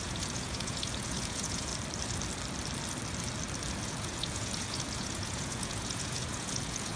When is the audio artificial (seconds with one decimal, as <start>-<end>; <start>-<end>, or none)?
0.0-1.7; 3.8-7.0